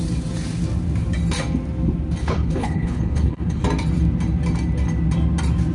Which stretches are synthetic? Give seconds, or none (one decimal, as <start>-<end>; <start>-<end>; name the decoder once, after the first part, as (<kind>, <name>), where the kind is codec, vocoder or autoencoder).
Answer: 2.2-3.6 (codec, HILCodec)